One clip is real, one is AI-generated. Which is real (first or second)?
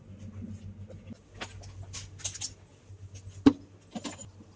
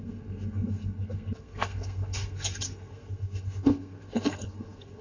first